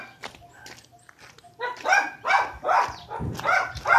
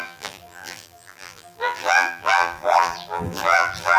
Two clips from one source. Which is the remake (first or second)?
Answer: second